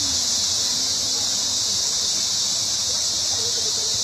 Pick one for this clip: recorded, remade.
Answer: recorded